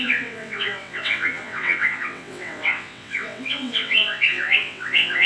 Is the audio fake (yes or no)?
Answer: yes